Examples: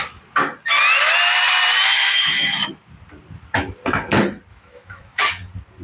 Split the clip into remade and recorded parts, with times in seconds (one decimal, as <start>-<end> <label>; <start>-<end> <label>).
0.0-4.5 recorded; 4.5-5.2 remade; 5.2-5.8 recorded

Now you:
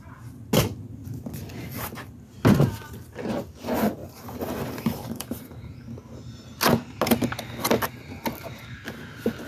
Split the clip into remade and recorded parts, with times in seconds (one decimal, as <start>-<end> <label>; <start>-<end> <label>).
0.0-4.0 recorded; 4.0-5.8 remade; 5.8-9.5 recorded

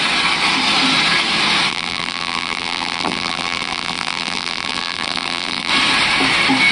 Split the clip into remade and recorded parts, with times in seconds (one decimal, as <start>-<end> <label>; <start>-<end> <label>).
0.0-1.7 recorded; 1.7-5.7 remade; 5.7-6.7 recorded

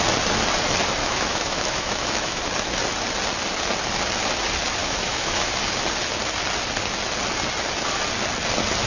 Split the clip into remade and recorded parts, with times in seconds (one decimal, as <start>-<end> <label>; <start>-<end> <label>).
0.0-1.0 recorded; 1.0-2.4 remade; 2.4-4.8 recorded; 4.8-5.5 remade; 5.5-8.9 recorded